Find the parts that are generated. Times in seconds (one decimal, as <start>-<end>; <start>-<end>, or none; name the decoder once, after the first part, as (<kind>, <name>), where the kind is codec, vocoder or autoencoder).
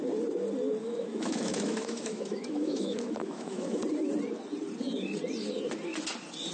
0.8-3.8 (autoencoder, DAC-VAE)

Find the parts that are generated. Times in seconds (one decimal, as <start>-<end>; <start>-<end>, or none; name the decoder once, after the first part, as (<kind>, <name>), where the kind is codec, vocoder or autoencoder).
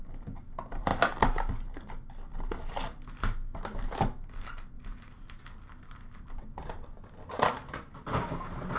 none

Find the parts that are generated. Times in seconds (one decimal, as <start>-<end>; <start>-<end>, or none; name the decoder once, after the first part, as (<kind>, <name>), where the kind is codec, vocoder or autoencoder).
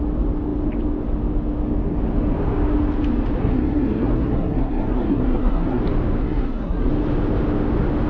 3.4-5.8 (codec, SNAC); 6.2-6.9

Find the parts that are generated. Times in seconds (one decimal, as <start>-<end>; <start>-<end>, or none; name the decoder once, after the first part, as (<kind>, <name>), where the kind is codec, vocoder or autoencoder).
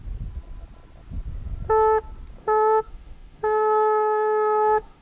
2.4-5.0 (autoencoder, DAC-VAE)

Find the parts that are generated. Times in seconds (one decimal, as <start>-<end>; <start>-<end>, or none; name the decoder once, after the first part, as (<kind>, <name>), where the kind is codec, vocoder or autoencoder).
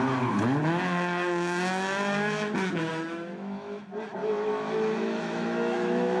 2.9-3.8 (autoencoder, DAC-VAE); 4.2-6.2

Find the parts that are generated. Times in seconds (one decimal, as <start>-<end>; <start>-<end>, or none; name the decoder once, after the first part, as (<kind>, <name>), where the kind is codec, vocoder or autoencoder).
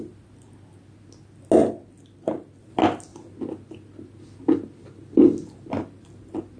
none